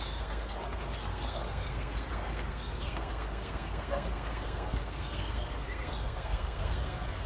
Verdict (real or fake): fake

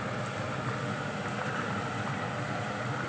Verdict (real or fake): real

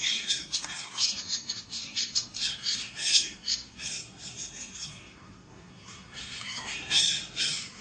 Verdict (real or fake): fake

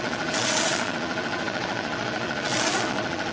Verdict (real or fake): fake